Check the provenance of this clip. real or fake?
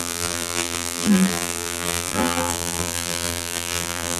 fake